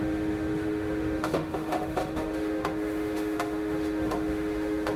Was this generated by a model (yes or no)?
yes